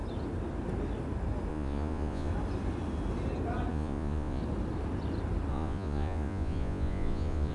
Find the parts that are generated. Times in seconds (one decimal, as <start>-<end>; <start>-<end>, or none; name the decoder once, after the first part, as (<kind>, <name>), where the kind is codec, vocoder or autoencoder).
1.5-2.3 (vocoder, Vocos); 3.7-4.4; 5.5-7.5